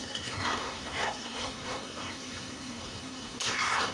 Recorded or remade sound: remade